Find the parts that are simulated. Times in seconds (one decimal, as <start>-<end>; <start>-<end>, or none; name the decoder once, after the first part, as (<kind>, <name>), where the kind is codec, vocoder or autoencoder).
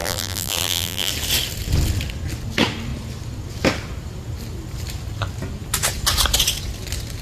0.0-1.1 (vocoder, BigVGAN v2)